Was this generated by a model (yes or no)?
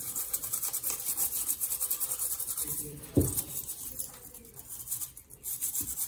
yes